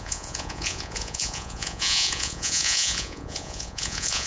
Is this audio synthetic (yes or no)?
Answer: yes